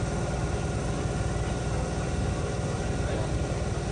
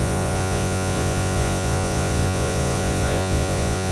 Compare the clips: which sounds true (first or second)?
first